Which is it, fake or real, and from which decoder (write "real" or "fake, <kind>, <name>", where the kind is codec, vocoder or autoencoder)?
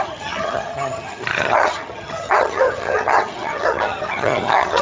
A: fake, vocoder, HiFi-GAN